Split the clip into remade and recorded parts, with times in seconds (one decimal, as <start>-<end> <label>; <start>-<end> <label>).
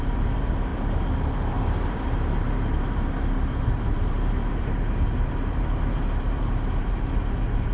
0.0-7.7 remade